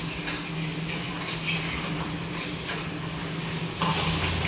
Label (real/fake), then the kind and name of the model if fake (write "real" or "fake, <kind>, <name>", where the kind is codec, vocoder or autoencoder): real